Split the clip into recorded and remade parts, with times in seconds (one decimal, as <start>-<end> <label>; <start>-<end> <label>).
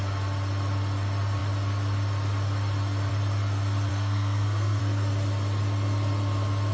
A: 0.0-3.9 recorded; 3.9-4.8 remade; 4.8-6.7 recorded